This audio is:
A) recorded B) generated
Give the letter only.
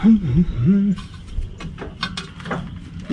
A